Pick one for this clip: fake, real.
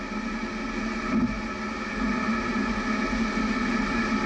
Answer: real